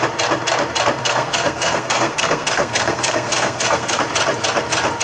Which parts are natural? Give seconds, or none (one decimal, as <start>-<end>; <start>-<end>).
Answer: 0.0-1.0; 4.0-5.0